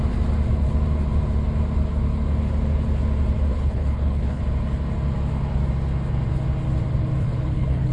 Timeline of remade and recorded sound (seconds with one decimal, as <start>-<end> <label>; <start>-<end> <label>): 0.0-3.5 recorded; 3.5-4.4 remade; 4.4-7.2 recorded; 7.2-7.9 remade